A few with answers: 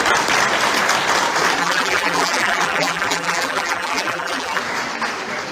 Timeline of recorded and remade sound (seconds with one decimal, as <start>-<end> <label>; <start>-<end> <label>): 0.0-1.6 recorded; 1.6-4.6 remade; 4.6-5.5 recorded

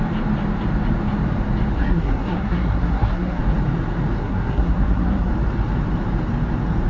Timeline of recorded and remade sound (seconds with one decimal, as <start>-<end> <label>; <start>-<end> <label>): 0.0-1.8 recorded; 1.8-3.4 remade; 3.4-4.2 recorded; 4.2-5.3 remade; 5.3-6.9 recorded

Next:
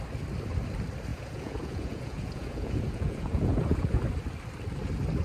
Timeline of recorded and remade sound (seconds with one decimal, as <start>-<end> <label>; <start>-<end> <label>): 0.0-1.1 recorded; 1.1-4.0 remade; 4.0-5.2 recorded